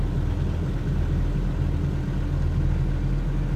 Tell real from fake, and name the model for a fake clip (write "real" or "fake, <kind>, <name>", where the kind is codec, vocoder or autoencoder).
real